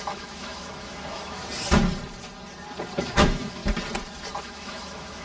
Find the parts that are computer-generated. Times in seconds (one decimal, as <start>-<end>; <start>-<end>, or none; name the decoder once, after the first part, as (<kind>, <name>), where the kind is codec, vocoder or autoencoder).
0.0-1.4 (autoencoder, DAC-VAE); 3.0-3.6; 4.4-5.2